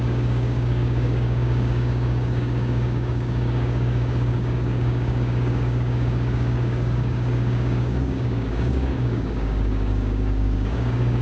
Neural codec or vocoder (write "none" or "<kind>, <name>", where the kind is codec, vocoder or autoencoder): codec, DAC